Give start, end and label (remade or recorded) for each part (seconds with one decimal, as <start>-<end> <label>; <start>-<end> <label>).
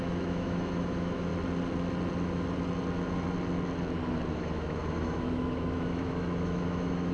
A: 0.0-1.3 remade; 1.3-4.3 recorded; 4.3-7.1 remade